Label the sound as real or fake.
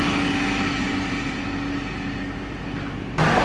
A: real